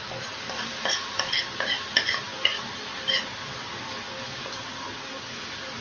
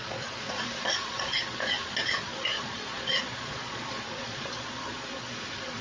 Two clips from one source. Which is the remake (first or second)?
second